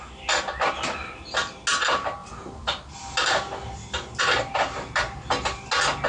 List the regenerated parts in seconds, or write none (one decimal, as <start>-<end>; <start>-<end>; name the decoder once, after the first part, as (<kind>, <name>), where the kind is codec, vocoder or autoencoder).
none